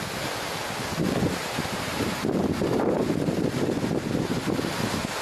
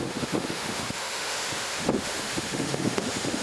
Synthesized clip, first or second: second